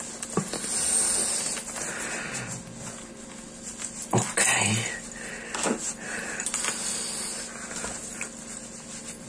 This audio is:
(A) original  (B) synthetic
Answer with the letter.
A